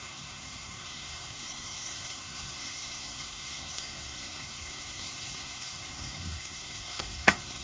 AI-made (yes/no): yes